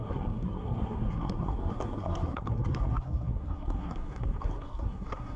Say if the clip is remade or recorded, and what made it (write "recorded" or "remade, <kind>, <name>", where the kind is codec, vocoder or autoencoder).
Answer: remade, codec, SNAC